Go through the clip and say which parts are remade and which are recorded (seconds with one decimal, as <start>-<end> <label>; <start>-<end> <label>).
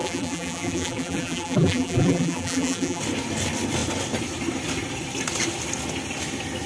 0.0-3.0 remade; 3.0-6.7 recorded